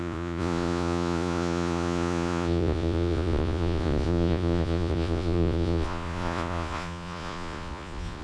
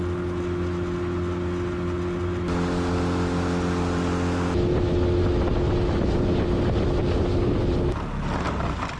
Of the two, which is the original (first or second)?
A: second